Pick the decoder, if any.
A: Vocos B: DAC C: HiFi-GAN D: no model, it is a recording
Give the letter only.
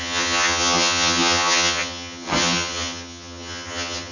C